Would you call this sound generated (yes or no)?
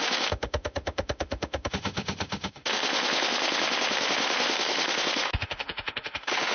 yes